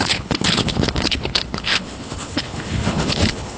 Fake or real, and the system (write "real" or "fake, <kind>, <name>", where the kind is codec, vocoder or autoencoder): fake, codec, HILCodec